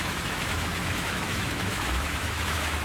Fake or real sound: fake